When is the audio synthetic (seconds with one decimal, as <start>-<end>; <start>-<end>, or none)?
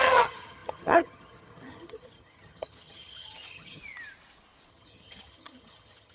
0.0-3.8; 4.7-6.1